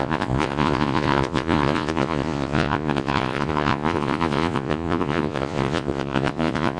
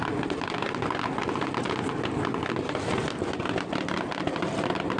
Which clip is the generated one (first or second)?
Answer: first